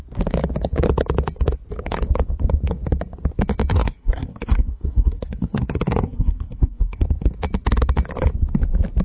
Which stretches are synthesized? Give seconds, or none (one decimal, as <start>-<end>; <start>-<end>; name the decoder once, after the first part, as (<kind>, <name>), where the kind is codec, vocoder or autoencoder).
3.7-7.0 (codec, SNAC)